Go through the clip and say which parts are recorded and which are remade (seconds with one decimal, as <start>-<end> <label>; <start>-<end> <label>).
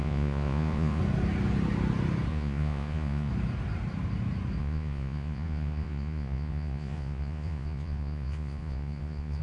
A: 0.0-1.0 remade; 1.0-2.3 recorded; 2.3-3.3 remade; 3.3-4.6 recorded; 4.6-9.4 remade